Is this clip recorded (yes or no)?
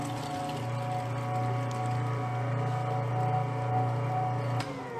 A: yes